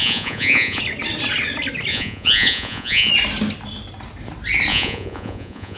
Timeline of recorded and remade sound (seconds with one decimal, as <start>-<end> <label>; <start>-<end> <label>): 0.0-0.8 remade; 0.8-1.9 recorded; 1.9-3.1 remade; 3.1-4.7 recorded; 4.7-5.8 remade